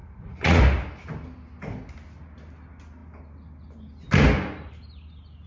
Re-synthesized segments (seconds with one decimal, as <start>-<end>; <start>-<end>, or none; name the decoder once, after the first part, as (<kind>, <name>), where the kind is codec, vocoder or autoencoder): 0.0-0.6 (vocoder, Vocos)